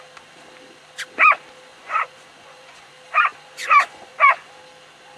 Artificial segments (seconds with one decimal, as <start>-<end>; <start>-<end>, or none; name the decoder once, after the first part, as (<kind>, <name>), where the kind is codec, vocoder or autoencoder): 1.7-2.9 (vocoder, Vocos); 3.3-4.5